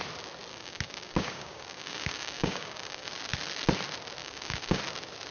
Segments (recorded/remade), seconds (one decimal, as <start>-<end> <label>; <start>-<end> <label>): 0.0-0.5 recorded; 0.5-3.1 remade; 3.1-4.2 recorded; 4.2-4.8 remade; 4.8-5.3 recorded